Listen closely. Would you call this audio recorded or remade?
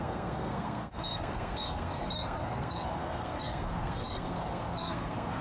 remade